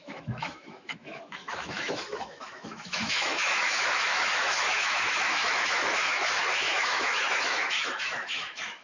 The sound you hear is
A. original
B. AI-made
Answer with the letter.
B